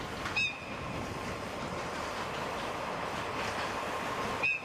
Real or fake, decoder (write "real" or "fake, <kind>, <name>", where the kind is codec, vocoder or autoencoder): real